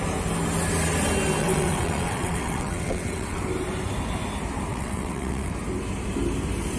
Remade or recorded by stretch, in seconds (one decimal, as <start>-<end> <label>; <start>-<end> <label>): 0.0-1.4 recorded; 1.4-3.4 remade; 3.4-4.7 recorded; 4.7-5.5 remade; 5.5-6.8 recorded